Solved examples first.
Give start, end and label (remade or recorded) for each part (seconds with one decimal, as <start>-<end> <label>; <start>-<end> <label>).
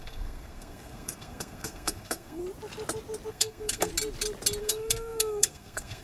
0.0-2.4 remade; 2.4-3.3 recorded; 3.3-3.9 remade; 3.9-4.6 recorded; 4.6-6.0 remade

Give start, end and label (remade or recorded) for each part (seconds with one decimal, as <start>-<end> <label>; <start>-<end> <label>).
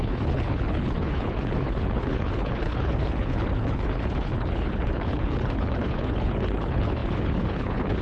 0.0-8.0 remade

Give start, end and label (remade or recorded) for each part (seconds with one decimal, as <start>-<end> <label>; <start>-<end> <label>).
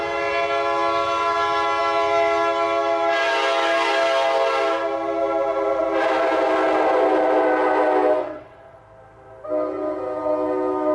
0.0-8.2 recorded; 8.2-8.8 remade; 8.8-10.9 recorded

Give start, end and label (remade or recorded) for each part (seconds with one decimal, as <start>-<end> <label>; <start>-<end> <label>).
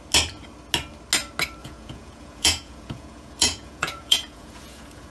0.0-1.6 recorded; 1.6-5.1 remade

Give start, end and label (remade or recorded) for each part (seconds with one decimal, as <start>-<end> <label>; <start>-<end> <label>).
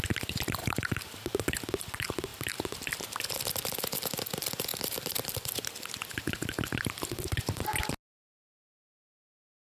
0.0-0.6 recorded; 0.6-1.6 remade; 1.6-4.7 recorded; 4.7-5.3 remade; 5.3-9.8 recorded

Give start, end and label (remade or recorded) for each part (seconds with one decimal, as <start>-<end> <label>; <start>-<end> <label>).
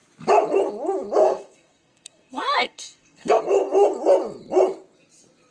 0.0-1.2 recorded; 1.2-3.4 remade; 3.4-5.5 recorded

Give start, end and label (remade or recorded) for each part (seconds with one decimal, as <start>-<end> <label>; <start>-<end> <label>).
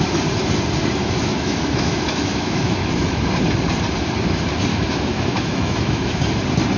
0.0-1.0 recorded; 1.0-3.3 remade; 3.3-4.7 recorded; 4.7-6.2 remade; 6.2-6.8 recorded